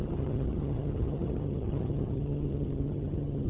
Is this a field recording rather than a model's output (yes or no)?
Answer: no